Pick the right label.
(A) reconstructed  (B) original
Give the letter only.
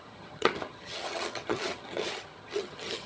A